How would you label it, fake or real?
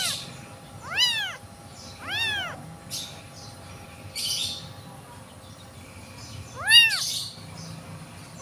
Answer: real